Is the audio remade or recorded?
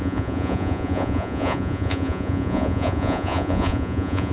remade